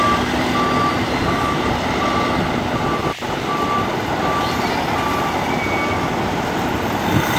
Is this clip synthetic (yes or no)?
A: no